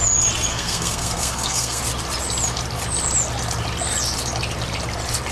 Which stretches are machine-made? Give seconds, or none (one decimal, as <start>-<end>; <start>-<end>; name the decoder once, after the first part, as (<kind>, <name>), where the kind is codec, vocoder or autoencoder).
0.5-1.8 (codec, SNAC)

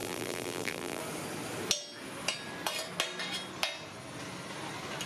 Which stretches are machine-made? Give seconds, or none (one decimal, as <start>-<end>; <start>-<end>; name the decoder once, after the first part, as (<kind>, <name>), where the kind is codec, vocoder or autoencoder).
0.0-1.0 (vocoder, BigVGAN v2)

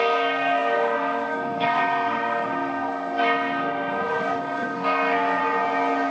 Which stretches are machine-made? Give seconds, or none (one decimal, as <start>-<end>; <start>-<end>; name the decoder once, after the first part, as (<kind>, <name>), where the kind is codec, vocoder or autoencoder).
0.0-5.4 (codec, SNAC)

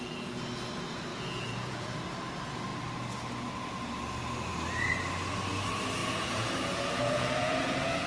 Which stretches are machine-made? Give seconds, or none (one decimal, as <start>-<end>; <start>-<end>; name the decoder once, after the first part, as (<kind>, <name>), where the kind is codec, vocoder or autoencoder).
1.1-2.0 (vocoder, Vocos); 6.0-8.1

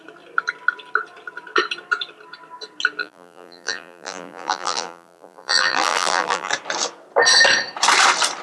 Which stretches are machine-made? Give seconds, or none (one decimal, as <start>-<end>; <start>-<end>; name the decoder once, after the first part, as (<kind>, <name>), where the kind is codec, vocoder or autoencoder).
3.0-6.5 (vocoder, BigVGAN v2)

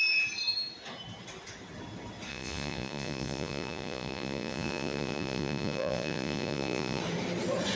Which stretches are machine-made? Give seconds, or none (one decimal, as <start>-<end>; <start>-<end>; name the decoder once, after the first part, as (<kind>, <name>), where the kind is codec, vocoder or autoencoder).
2.3-7.0 (vocoder, Vocos)